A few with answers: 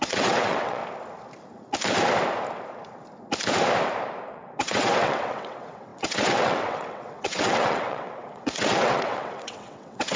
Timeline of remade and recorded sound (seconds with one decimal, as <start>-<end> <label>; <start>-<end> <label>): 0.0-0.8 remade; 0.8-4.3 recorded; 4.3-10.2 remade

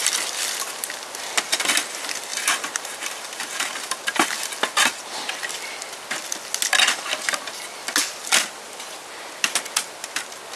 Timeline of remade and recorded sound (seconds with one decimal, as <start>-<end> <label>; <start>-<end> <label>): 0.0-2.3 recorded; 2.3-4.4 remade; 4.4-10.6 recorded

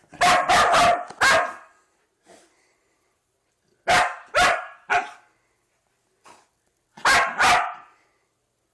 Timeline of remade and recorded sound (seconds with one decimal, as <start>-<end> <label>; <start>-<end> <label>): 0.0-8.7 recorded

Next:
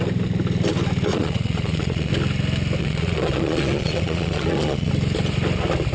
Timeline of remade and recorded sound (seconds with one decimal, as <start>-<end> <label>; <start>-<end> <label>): 0.0-1.1 recorded; 1.1-2.1 remade; 2.1-2.8 recorded; 2.8-4.9 remade; 4.9-5.9 recorded

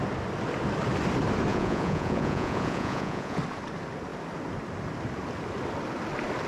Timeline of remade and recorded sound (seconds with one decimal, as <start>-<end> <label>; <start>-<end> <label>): 0.0-1.5 recorded; 1.5-3.4 remade; 3.4-6.5 recorded

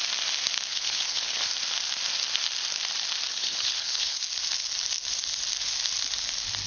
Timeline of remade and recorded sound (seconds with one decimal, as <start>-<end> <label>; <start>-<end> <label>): 0.0-0.7 recorded; 0.7-1.5 remade; 1.5-3.3 recorded; 3.3-4.2 remade; 4.2-6.7 recorded

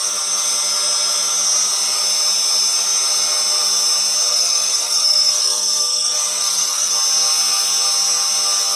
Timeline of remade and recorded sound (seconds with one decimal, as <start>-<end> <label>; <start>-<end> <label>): 0.0-4.3 recorded; 4.3-6.9 remade; 6.9-8.8 recorded